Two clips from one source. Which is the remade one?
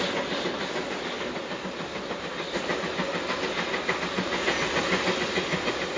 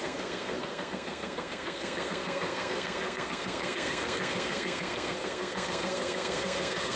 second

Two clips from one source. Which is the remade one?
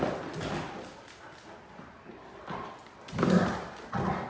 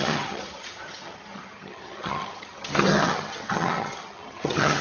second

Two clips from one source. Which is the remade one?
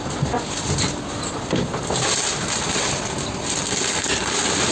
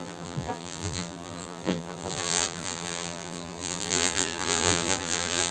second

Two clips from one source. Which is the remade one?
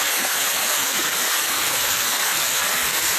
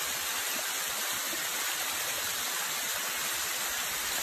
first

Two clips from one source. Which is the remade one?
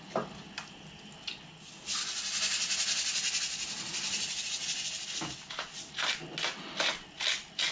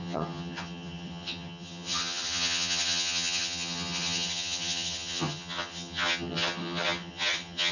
second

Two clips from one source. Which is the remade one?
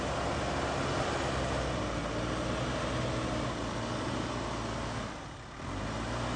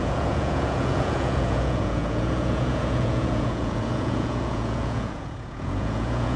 second